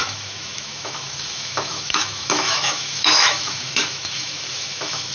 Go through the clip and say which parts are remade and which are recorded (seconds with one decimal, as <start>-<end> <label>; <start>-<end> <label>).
0.0-5.1 remade